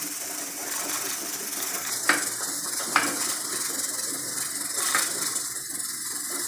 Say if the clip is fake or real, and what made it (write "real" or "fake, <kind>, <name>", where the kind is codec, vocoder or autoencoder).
fake, vocoder, BigVGAN v2